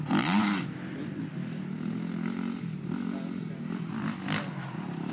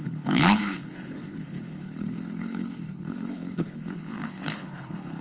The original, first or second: first